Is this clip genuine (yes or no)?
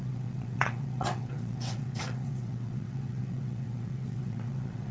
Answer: no